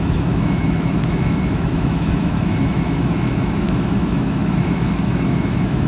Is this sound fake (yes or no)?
yes